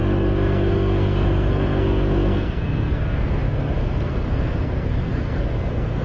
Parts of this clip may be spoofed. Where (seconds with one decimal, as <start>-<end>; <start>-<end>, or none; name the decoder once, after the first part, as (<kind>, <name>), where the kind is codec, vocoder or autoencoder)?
0.0-6.0 (codec, SNAC)